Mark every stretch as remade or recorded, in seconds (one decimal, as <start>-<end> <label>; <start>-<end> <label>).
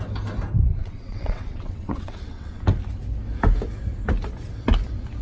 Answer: 0.0-0.8 recorded; 0.8-2.6 remade; 2.6-5.2 recorded